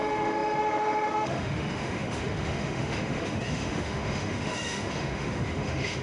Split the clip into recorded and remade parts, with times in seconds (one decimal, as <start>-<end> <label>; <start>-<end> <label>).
0.0-6.0 remade